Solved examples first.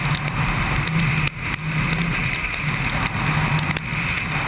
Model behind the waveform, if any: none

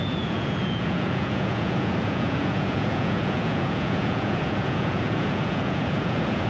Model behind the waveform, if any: vocoder, Vocos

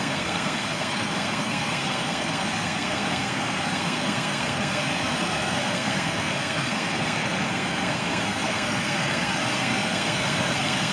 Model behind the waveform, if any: codec, SNAC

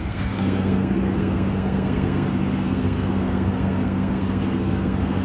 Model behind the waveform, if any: codec, SNAC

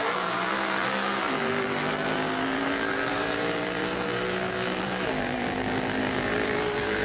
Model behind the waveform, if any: vocoder, BigVGAN v2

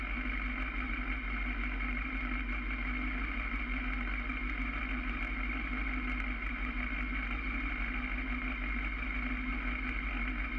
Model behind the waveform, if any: none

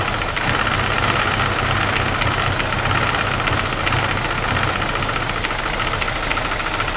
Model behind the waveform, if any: none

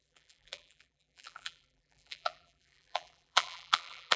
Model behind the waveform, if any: vocoder, BigVGAN v2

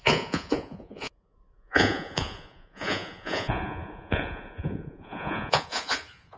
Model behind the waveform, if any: vocoder, Vocos